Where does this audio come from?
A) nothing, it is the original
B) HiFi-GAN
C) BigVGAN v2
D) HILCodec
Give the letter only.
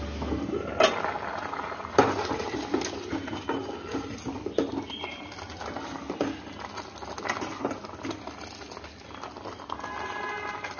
A